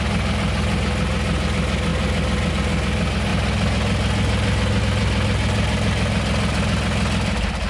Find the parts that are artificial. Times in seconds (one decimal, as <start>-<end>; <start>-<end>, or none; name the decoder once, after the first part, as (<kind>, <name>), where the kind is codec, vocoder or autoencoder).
none